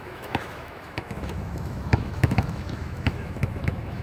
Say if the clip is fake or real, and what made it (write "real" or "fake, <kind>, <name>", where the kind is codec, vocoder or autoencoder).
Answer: fake, autoencoder, DAC-VAE